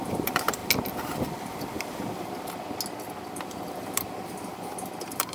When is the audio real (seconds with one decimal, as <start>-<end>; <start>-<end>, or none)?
0.6-3.4